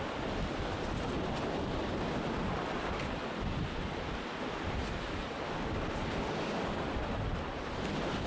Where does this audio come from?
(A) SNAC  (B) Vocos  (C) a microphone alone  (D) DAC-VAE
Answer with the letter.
C